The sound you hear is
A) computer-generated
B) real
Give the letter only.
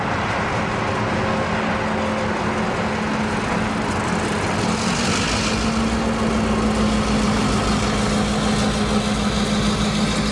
B